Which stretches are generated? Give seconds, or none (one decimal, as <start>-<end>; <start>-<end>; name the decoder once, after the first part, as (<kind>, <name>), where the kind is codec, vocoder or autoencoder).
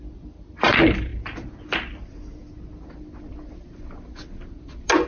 none